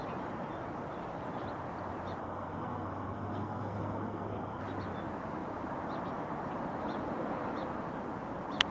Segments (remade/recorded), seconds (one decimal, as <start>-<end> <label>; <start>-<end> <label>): 0.0-2.2 recorded; 2.2-4.6 remade; 4.6-8.7 recorded